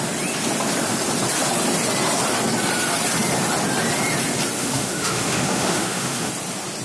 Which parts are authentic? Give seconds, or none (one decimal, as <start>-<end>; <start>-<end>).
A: 0.0-4.6; 6.3-6.8